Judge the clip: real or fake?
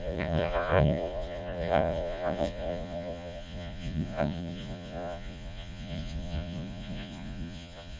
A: fake